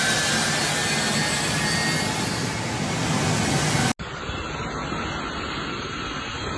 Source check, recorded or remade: recorded